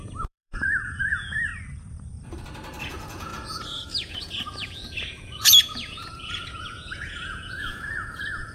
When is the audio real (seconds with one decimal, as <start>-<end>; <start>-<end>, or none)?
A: 1.5-2.8